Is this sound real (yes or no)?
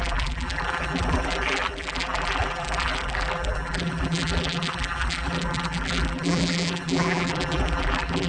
no